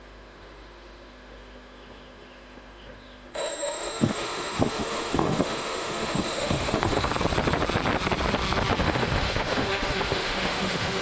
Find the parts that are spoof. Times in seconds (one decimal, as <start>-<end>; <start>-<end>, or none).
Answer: 0.0-7.1; 8.8-11.0